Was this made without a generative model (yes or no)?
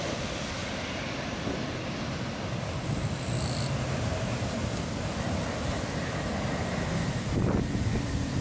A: yes